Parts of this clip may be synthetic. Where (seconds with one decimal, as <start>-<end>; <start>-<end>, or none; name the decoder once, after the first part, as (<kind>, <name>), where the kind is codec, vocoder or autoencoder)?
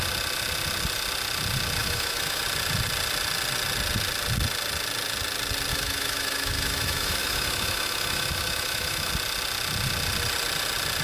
1.8-2.4 (autoencoder, DAC-VAE); 5.7-9.1